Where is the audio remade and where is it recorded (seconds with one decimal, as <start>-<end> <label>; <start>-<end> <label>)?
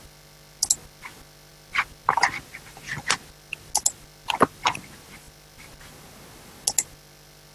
0.0-7.5 recorded